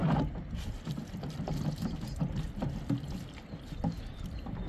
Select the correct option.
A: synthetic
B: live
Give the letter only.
B